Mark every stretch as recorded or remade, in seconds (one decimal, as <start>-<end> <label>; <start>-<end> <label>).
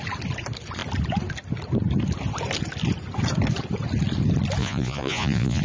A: 0.0-4.6 recorded; 4.6-5.6 remade